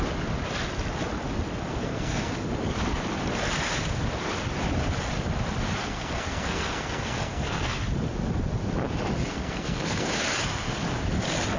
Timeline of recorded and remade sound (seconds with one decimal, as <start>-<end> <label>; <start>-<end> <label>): 0.0-1.7 recorded; 1.7-2.3 remade; 2.3-5.8 recorded; 5.8-7.8 remade; 7.8-9.3 recorded; 9.3-10.1 remade; 10.1-11.6 recorded